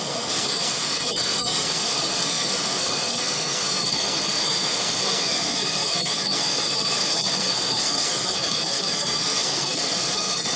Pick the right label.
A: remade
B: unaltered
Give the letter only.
A